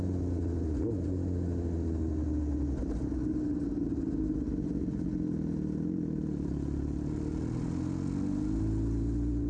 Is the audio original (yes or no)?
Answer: yes